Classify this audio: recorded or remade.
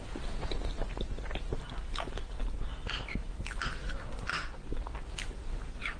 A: recorded